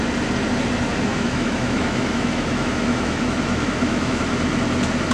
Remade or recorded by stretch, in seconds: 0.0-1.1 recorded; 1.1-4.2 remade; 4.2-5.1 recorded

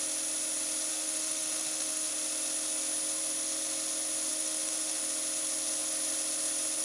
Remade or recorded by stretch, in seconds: 0.0-0.9 recorded; 0.9-2.1 remade; 2.1-4.3 recorded; 4.3-5.0 remade; 5.0-6.8 recorded

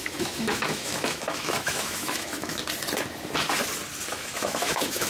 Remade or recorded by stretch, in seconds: 0.0-2.6 remade; 2.6-4.1 recorded; 4.1-5.1 remade

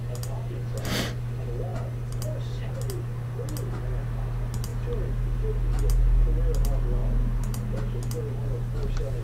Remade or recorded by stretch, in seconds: 0.0-9.2 recorded

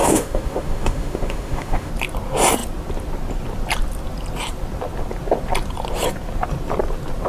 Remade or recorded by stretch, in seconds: 0.0-1.9 remade; 1.9-7.3 recorded